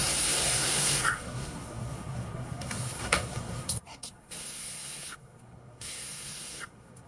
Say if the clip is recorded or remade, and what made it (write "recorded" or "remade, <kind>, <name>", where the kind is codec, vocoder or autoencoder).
remade, codec, SNAC